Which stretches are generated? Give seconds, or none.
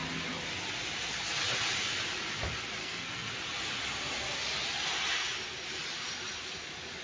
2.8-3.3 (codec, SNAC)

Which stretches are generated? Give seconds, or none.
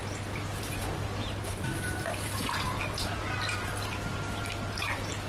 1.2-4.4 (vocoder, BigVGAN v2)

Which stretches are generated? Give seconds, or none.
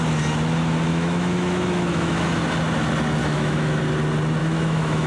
0.9-2.3 (autoencoder, DAC-VAE); 3.2-3.8; 4.4-5.1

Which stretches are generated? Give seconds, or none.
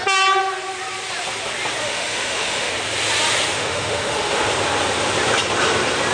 1.8-2.7 (autoencoder, DAC-VAE); 3.5-4.5